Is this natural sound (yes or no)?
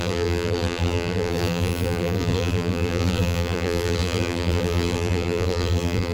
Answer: no